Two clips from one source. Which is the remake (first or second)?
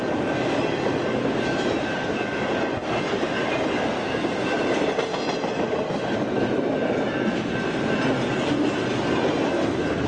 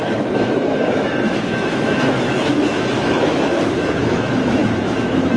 second